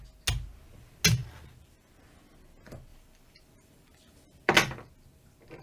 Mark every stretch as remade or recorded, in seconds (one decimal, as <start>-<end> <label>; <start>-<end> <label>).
0.0-1.2 recorded; 1.2-2.0 remade; 2.0-2.9 recorded; 2.9-4.5 remade; 4.5-5.6 recorded